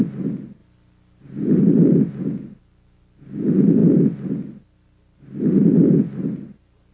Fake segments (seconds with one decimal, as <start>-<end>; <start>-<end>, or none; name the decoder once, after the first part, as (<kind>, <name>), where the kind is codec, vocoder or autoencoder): none